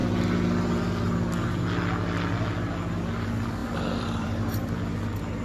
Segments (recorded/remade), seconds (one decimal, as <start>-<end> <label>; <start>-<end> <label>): 0.0-3.6 recorded; 3.6-4.8 remade; 4.8-5.4 recorded